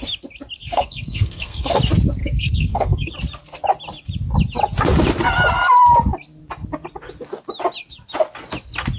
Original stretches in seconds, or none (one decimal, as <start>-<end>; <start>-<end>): 0.0-0.6; 1.8-2.2; 3.1-9.0